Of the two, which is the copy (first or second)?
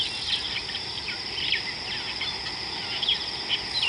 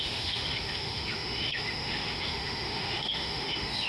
second